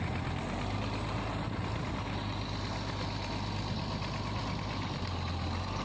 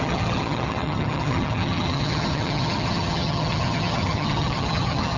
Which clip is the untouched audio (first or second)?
first